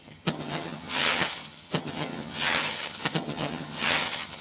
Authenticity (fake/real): fake